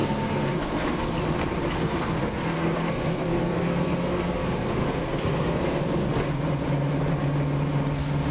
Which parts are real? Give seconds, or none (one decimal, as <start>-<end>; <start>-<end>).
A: 1.1-1.8; 5.8-8.3